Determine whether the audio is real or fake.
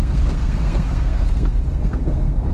fake